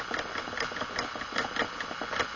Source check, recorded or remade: recorded